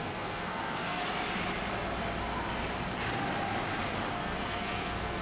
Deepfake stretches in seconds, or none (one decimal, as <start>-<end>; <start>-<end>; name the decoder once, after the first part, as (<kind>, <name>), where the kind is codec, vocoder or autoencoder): 0.0-1.0 (codec, SNAC); 4.1-5.2